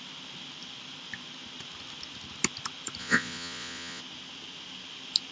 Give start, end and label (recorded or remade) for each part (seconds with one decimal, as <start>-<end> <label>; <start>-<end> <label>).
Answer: 0.0-3.0 recorded; 3.0-4.0 remade; 4.0-5.3 recorded